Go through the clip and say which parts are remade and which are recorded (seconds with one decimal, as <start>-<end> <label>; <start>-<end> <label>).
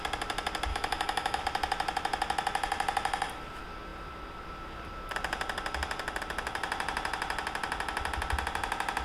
0.0-0.7 recorded; 0.7-1.4 remade; 1.4-9.0 recorded